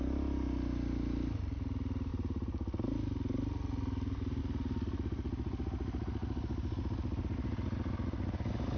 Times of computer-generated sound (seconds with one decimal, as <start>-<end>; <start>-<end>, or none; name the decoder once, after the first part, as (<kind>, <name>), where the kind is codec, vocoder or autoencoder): none